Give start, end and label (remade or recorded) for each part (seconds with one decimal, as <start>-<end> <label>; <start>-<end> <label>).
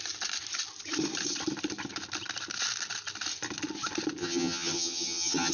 0.0-4.2 recorded; 4.2-5.5 remade